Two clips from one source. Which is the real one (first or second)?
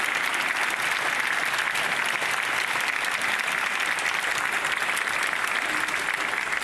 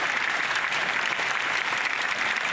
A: first